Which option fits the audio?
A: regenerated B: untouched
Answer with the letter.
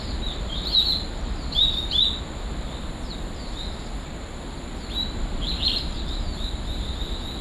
B